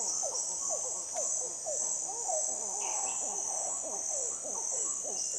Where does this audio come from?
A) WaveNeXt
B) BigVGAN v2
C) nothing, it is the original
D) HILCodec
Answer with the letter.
C